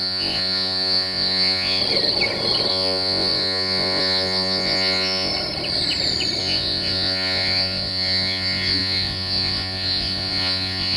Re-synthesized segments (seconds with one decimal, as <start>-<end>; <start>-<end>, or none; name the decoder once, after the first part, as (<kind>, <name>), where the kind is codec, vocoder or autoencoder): 0.0-1.8 (vocoder, Vocos); 2.7-5.3; 6.4-11.0